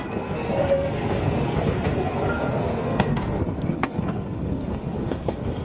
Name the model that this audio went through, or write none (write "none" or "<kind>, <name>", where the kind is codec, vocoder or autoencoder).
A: codec, SNAC